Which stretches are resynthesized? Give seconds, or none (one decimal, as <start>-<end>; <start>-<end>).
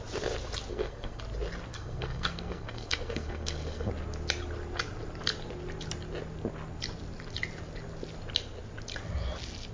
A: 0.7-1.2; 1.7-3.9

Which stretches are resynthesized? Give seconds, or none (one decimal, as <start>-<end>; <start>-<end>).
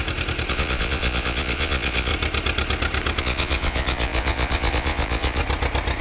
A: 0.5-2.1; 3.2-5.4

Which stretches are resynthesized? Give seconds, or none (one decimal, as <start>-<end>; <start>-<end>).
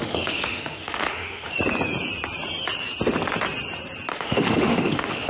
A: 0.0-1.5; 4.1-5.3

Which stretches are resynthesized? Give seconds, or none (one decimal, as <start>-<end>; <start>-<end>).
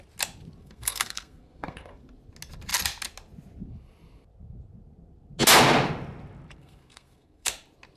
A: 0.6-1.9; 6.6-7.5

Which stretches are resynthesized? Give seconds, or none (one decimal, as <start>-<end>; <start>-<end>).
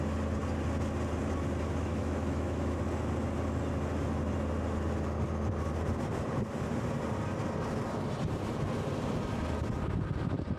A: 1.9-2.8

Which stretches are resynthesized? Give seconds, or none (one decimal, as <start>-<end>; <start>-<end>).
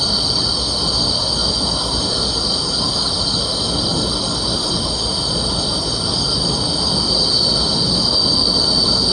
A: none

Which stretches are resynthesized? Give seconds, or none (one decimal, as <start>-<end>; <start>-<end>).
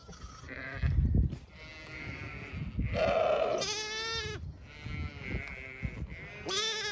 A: none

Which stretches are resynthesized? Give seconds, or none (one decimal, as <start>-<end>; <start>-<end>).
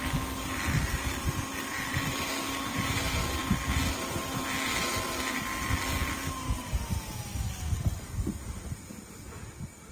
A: none